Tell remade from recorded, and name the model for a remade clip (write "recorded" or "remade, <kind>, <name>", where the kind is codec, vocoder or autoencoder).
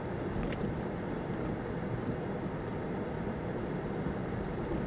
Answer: recorded